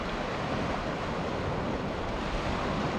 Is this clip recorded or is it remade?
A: recorded